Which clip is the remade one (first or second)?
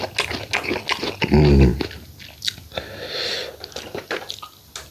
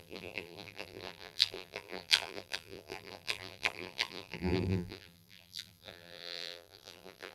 second